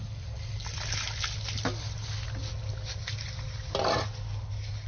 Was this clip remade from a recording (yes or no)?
no